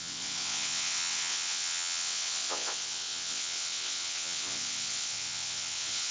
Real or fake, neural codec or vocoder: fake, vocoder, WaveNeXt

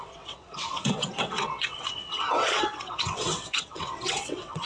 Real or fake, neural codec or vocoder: fake, vocoder, WaveNeXt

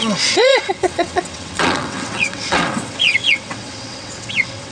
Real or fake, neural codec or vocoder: fake, vocoder, WaveNeXt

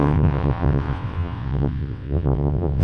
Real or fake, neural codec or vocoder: fake, vocoder, WaveNeXt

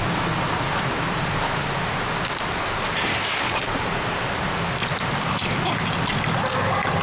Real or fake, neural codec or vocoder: real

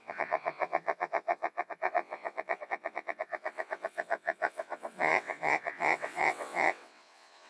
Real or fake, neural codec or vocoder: fake, vocoder, WaveNeXt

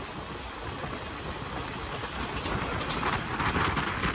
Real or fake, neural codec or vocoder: real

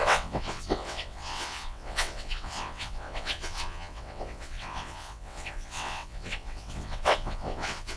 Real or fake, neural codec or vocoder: fake, vocoder, WaveNeXt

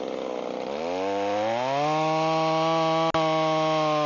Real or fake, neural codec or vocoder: real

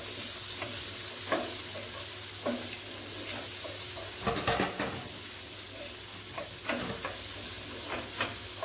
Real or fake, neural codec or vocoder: real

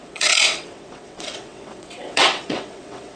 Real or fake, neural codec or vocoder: fake, vocoder, WaveNeXt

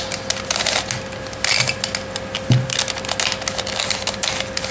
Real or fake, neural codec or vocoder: real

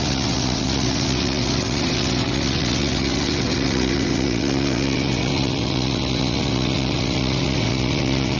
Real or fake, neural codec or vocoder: fake, vocoder, WaveNeXt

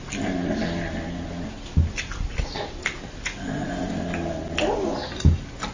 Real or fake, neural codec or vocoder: real